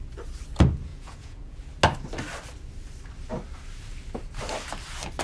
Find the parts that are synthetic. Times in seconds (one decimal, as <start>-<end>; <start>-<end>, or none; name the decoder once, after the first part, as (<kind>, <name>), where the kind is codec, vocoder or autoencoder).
0.9-1.6 (vocoder, Vocos)